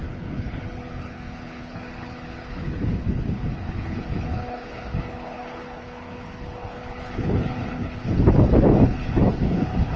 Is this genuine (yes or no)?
no